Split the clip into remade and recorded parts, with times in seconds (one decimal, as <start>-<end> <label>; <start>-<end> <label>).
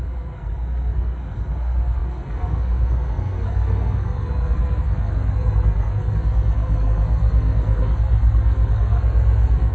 0.0-9.7 remade